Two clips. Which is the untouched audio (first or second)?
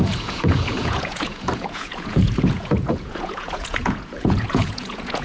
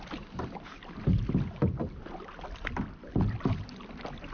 second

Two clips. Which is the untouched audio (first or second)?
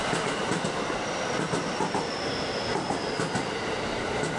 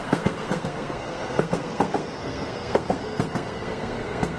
first